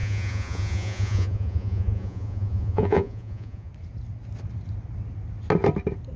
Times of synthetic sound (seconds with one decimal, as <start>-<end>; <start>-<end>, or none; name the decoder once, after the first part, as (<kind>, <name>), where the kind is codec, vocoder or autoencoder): 0.0-3.7 (vocoder, Vocos)